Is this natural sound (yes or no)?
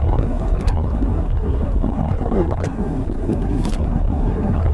no